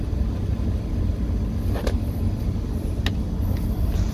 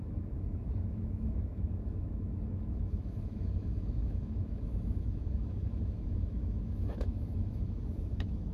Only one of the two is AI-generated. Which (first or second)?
second